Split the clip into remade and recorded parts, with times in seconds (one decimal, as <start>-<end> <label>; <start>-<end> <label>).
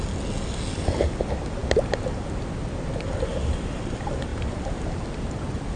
0.0-5.8 recorded